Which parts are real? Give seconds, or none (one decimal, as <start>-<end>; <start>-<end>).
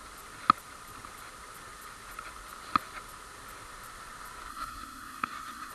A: 0.0-4.5